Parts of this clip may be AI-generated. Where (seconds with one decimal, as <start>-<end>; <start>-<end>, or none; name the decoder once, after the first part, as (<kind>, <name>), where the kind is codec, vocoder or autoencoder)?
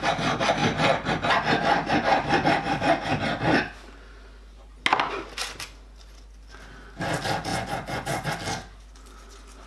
7.5-8.3 (vocoder, Vocos)